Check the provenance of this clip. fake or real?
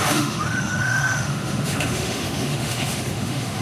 fake